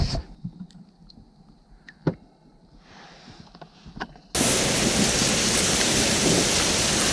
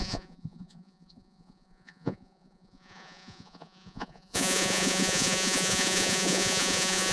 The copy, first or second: second